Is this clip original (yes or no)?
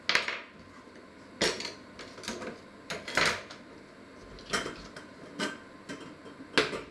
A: yes